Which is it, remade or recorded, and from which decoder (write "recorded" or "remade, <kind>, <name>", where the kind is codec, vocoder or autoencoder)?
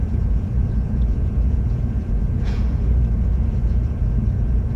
remade, vocoder, Vocos